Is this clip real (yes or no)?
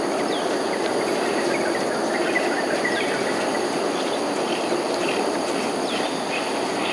no